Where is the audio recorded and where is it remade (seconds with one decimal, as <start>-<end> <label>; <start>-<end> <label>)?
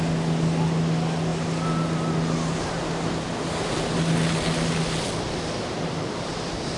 0.0-6.8 recorded